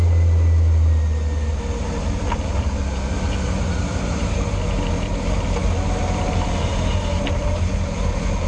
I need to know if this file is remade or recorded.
recorded